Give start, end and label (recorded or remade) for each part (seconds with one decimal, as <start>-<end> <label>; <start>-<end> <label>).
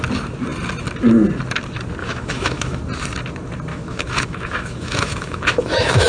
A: 0.0-2.0 recorded; 2.0-2.8 remade; 2.8-3.7 recorded; 3.7-6.1 remade